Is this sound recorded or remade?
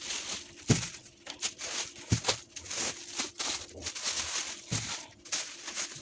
recorded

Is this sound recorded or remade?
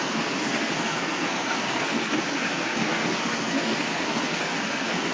remade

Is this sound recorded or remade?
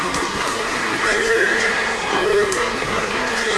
remade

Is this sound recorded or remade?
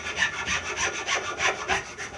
recorded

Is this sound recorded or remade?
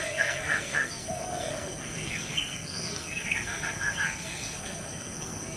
remade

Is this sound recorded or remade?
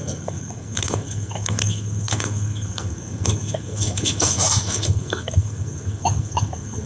remade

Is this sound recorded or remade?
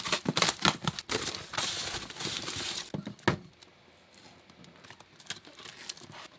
recorded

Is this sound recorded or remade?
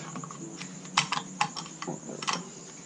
recorded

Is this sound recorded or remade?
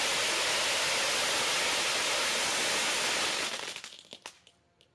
recorded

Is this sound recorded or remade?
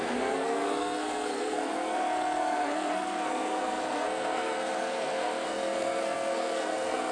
remade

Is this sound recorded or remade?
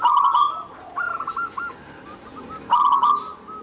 recorded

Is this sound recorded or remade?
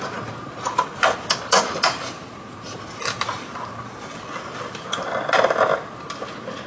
recorded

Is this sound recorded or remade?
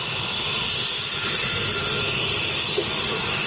recorded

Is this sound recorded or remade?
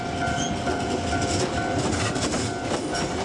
recorded